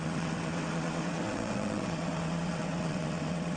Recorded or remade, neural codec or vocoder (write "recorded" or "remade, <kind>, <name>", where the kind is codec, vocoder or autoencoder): remade, vocoder, WaveNeXt